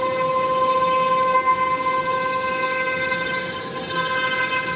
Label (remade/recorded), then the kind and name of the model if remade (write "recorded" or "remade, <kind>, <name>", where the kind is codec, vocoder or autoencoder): recorded